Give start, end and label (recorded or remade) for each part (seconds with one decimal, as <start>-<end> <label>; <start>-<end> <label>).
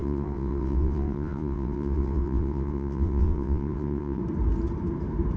0.0-4.2 remade; 4.2-5.4 recorded